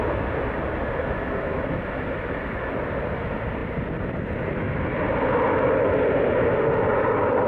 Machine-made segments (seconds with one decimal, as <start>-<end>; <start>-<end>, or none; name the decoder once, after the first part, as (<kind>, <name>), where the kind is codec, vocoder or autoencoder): none